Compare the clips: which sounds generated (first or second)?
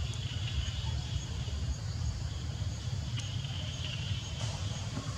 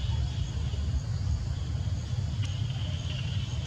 first